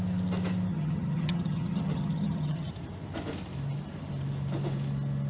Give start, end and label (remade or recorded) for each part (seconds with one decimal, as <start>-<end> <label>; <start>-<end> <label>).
0.0-0.7 recorded; 0.7-2.7 remade; 2.7-5.3 recorded

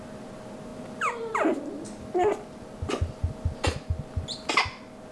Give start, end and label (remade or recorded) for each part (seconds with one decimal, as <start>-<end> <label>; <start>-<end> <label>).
0.0-5.1 recorded

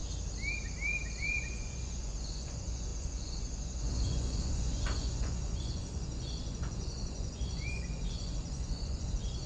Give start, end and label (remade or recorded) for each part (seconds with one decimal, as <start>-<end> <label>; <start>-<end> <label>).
0.0-1.2 recorded; 1.2-9.5 remade

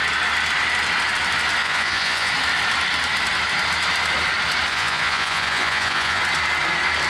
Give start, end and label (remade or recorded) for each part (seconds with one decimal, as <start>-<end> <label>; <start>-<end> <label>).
0.0-1.6 recorded; 1.6-2.3 remade; 2.3-4.7 recorded; 4.7-6.2 remade; 6.2-7.1 recorded

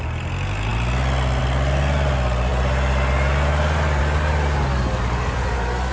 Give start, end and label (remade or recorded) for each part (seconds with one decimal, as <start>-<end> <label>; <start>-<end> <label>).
0.0-5.9 recorded